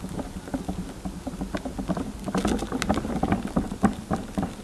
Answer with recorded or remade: recorded